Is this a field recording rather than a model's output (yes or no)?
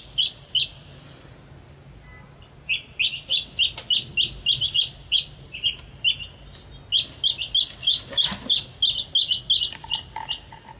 yes